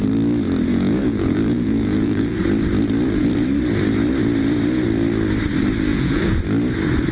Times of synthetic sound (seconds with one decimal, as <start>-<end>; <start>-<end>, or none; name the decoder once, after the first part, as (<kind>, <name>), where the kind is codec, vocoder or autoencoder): 0.7-2.4 (vocoder, Vocos); 5.9-6.4